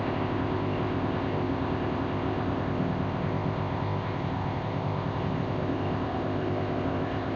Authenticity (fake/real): fake